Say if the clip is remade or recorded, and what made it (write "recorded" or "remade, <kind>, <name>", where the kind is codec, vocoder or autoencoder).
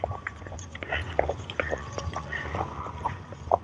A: remade, vocoder, Vocos